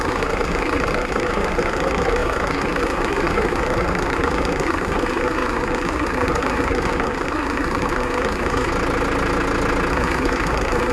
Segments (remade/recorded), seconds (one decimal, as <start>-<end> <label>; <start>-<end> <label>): 0.0-8.7 remade; 8.7-9.9 recorded; 9.9-10.9 remade